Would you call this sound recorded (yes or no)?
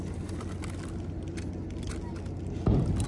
yes